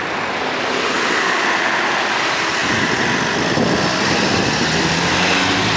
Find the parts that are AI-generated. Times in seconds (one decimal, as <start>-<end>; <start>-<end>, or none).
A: none